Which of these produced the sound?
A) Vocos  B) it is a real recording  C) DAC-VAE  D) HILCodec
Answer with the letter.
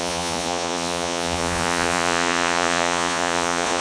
A